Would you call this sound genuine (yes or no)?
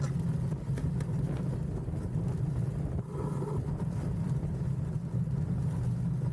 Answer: yes